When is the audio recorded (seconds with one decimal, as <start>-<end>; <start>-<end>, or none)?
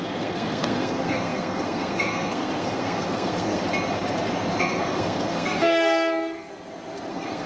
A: 3.6-4.6; 6.5-7.1